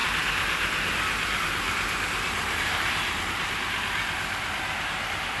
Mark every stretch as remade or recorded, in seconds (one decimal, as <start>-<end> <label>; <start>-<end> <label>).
0.0-3.2 remade; 3.2-5.4 recorded